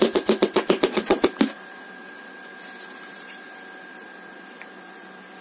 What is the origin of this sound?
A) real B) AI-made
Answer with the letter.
B